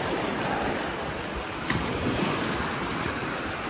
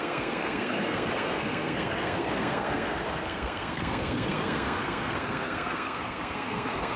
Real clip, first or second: first